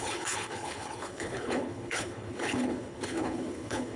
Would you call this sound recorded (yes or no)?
no